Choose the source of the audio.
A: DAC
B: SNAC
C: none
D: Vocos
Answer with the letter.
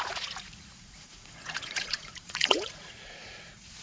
D